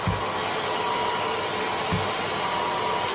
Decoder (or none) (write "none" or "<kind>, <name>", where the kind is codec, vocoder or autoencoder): none